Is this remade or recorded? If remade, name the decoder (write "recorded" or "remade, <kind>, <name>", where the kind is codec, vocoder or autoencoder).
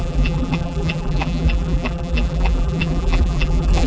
remade, vocoder, BigVGAN v2